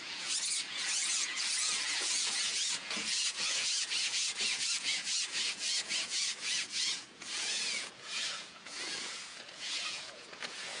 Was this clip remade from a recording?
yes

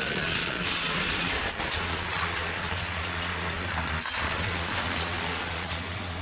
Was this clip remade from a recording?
yes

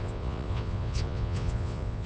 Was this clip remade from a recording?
yes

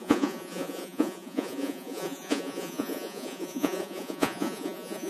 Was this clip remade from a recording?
yes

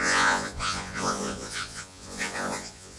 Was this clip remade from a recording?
yes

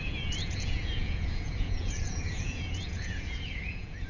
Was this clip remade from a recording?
yes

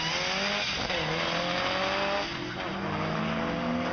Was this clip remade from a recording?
no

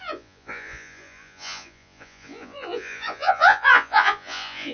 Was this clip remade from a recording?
yes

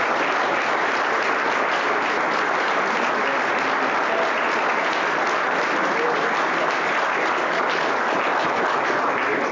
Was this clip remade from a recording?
no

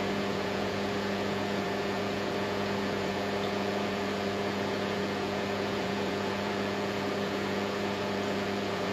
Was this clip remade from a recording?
yes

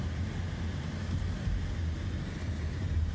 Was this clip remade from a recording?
no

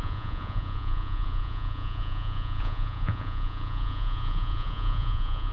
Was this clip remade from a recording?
yes